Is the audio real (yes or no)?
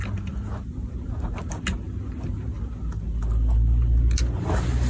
yes